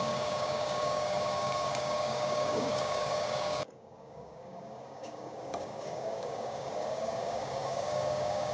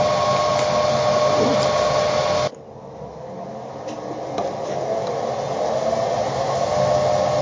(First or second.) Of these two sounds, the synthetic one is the first